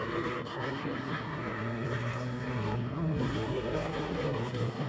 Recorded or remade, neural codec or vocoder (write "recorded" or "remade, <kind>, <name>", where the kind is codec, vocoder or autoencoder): remade, codec, SNAC